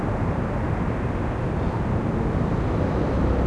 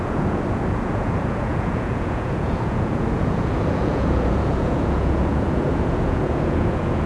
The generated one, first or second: second